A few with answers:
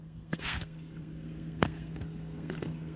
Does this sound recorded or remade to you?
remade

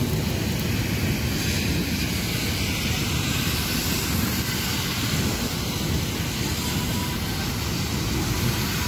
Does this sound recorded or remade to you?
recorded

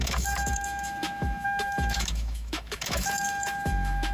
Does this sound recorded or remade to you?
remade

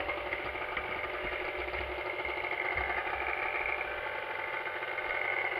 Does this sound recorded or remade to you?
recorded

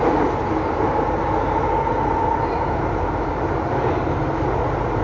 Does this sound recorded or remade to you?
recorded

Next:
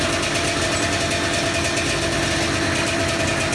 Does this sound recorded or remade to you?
recorded